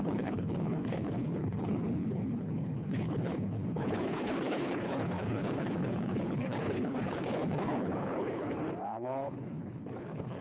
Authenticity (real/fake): fake